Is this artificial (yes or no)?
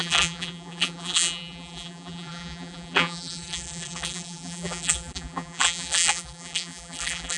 yes